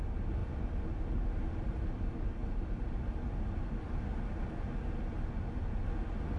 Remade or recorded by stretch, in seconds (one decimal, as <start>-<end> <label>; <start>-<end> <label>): 0.0-0.4 recorded; 0.4-1.7 remade; 1.7-2.4 recorded; 2.4-3.0 remade; 3.0-6.4 recorded